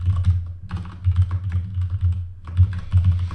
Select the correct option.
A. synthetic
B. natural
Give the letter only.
B